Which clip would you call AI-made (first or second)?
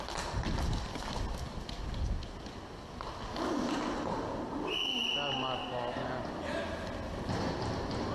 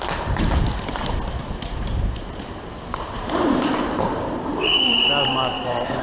second